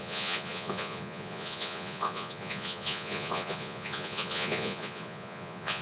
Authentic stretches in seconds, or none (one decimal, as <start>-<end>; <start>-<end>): none